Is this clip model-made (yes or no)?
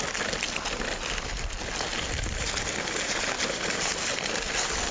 no